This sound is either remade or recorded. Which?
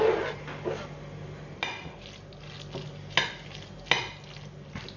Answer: recorded